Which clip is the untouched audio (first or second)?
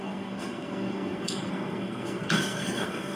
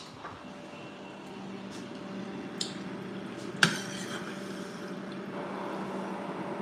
second